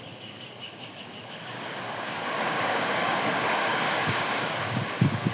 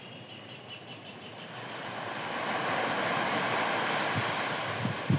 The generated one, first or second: first